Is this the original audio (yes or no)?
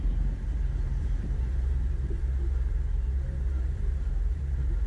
no